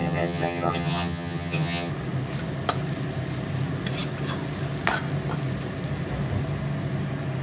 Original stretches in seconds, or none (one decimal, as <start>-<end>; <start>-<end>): 1.9-7.4